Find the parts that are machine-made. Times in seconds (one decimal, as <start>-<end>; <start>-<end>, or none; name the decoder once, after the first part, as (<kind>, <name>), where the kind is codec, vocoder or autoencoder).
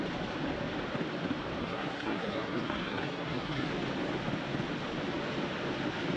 1.6-3.7 (codec, SNAC)